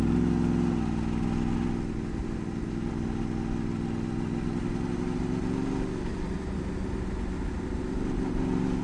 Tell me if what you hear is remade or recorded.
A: recorded